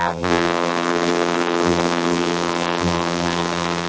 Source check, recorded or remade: remade